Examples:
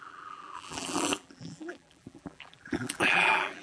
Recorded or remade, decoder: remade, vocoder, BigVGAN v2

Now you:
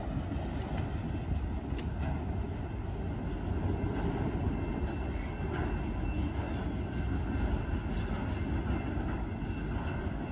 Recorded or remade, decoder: recorded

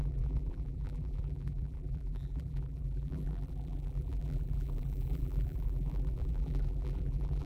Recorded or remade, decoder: remade, vocoder, BigVGAN v2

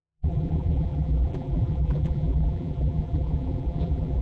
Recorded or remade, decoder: remade, vocoder, BigVGAN v2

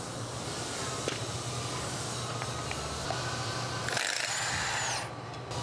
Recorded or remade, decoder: recorded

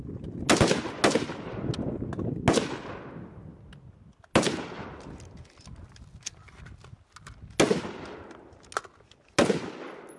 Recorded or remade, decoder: recorded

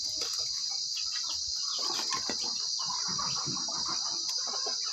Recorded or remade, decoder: remade, vocoder, BigVGAN v2